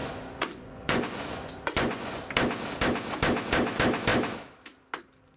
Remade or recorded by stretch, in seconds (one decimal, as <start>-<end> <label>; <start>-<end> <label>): 0.0-2.2 remade; 2.2-5.4 recorded